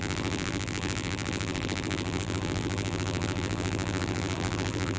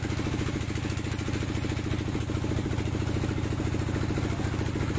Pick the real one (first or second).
second